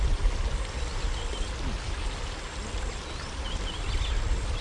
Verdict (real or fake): real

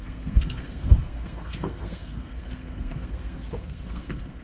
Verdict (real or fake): fake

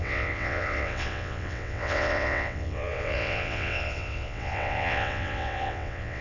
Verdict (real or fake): fake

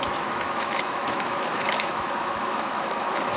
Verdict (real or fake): fake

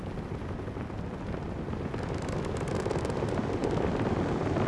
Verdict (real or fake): real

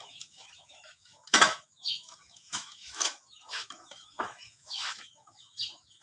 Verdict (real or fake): fake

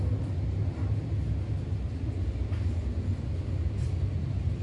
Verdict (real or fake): real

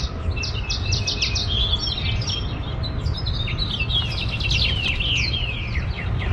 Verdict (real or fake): real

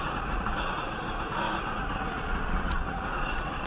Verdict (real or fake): fake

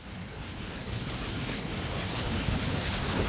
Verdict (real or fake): fake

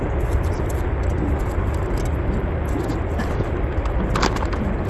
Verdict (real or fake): real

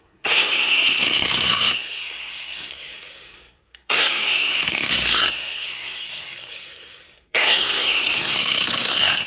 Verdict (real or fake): fake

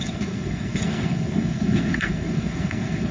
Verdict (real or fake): fake